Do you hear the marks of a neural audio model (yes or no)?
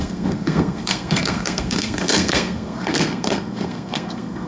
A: yes